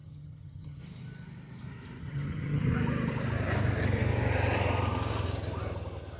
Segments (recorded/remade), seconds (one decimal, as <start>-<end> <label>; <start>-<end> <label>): 0.0-0.8 remade; 0.8-2.0 recorded; 2.0-2.6 remade; 2.6-6.2 recorded